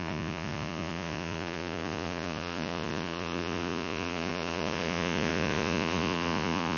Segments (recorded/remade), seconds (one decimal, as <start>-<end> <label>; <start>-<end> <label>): 0.0-6.8 remade